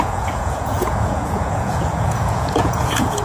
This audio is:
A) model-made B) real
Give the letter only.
A